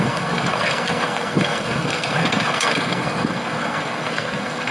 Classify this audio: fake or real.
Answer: fake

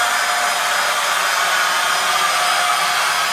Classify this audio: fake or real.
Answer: real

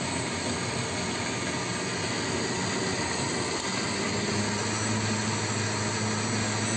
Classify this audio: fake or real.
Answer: real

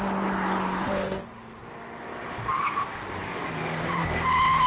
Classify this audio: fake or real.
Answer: real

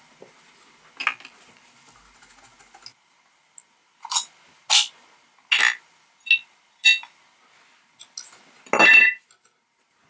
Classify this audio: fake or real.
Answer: real